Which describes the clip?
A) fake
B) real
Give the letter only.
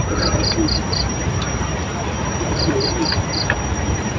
A